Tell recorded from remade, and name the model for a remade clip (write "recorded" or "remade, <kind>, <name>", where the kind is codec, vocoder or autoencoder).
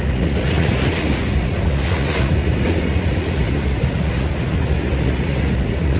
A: remade, vocoder, Vocos